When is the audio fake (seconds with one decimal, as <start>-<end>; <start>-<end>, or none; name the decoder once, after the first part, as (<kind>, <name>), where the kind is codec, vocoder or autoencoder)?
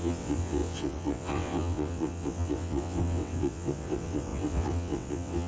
0.0-5.5 (vocoder, WaveNeXt)